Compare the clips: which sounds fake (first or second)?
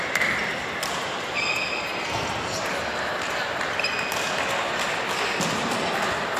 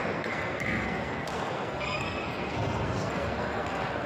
second